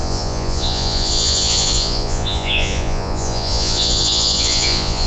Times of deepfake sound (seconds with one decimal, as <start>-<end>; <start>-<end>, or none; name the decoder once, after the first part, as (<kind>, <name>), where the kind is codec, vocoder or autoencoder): 0.0-5.1 (vocoder, Vocos)